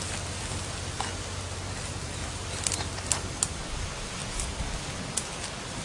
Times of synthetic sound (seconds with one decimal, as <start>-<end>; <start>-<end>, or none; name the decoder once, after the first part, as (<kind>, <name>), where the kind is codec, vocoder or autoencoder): none